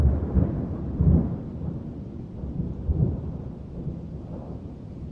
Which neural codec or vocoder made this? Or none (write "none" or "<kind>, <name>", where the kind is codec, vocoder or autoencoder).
none